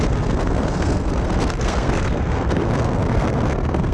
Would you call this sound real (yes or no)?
no